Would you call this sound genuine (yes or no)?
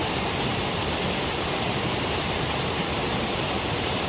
no